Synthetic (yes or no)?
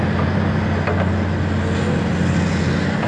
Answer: no